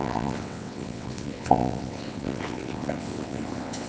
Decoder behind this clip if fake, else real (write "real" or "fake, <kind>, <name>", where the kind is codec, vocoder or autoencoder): fake, vocoder, WaveNeXt